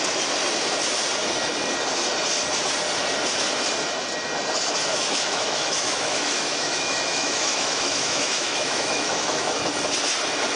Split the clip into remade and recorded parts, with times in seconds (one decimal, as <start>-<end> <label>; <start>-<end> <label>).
0.0-4.9 recorded; 4.9-9.6 remade; 9.6-10.6 recorded